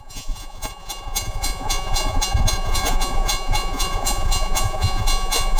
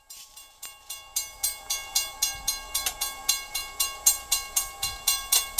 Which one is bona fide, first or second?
second